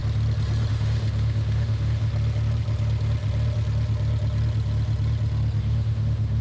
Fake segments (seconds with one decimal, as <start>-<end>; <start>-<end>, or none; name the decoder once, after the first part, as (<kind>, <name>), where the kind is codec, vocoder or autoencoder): 0.7-2.1 (autoencoder, DAC-VAE); 5.6-6.4